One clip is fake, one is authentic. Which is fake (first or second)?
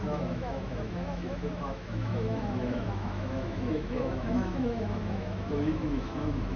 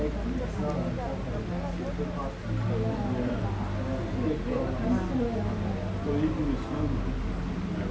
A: first